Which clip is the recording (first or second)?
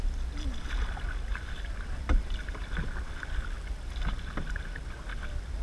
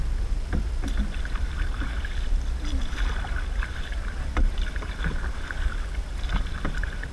first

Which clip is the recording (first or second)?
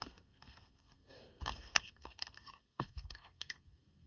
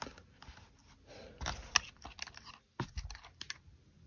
second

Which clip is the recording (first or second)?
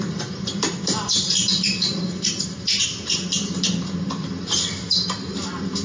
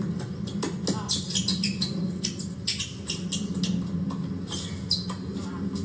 second